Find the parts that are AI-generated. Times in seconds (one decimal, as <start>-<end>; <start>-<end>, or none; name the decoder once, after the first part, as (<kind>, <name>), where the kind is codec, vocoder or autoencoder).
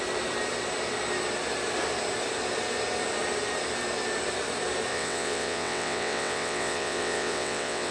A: 4.9-7.9 (vocoder, WaveNeXt)